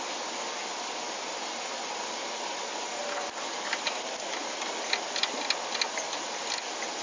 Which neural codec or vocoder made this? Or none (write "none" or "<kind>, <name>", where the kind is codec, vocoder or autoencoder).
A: none